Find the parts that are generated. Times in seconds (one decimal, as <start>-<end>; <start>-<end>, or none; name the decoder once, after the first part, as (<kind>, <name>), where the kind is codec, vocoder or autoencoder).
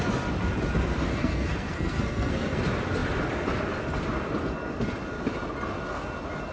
1.1-2.6 (codec, SNAC)